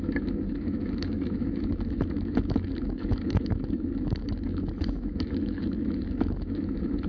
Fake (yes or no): yes